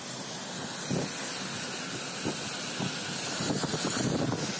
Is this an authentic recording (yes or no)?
yes